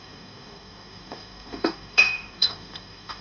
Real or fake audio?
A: fake